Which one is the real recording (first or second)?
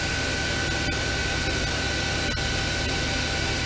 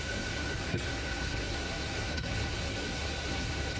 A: first